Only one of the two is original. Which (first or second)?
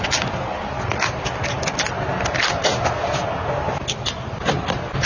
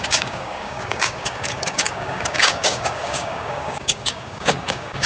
first